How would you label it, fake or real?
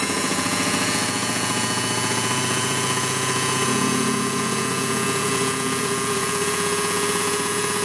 fake